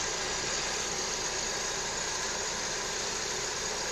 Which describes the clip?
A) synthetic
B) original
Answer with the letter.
B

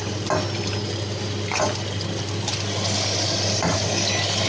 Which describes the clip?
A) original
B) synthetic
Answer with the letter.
A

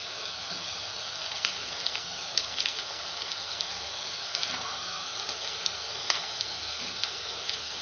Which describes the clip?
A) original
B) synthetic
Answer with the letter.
B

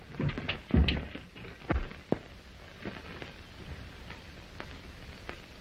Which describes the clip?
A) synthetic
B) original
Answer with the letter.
B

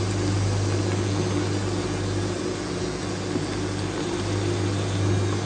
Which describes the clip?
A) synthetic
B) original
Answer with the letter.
B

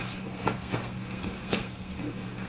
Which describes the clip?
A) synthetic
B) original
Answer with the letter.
A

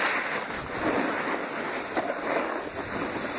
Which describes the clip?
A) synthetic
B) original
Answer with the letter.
B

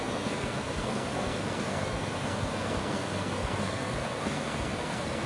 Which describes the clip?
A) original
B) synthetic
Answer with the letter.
B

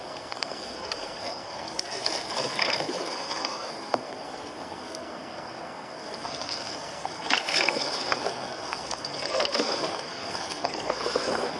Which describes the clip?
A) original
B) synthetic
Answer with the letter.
B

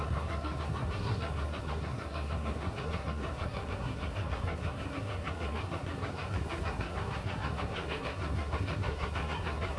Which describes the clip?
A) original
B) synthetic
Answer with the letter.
B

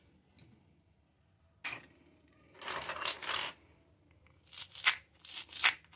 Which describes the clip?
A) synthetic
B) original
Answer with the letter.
B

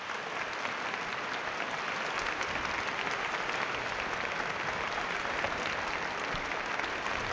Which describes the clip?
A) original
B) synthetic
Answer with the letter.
A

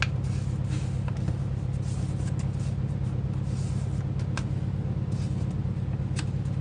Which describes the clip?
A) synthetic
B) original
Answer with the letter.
B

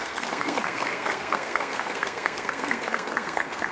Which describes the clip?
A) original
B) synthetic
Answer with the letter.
B